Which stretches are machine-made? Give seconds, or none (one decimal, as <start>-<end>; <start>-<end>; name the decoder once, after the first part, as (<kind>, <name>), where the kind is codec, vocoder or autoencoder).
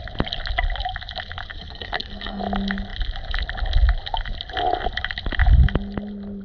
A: 1.5-2.4 (codec, SNAC)